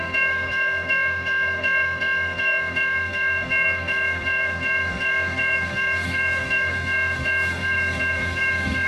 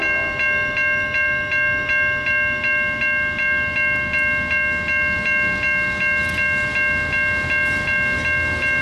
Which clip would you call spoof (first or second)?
first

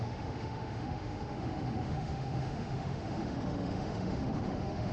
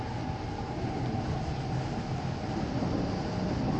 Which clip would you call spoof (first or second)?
first